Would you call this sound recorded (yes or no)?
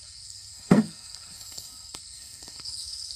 no